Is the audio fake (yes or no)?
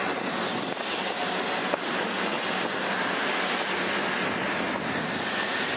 no